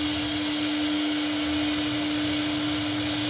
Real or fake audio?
real